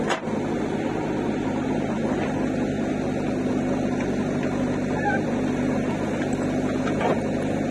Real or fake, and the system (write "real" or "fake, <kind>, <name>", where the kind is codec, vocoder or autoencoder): real